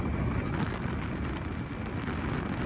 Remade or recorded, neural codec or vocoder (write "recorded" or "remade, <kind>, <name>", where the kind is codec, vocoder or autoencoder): recorded